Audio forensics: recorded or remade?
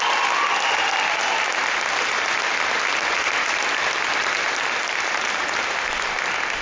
recorded